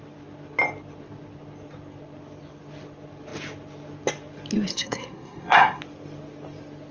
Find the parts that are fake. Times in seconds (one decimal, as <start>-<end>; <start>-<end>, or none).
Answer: 4.7-5.8